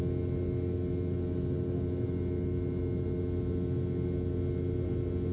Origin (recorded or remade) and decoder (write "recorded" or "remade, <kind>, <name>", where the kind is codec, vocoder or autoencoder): recorded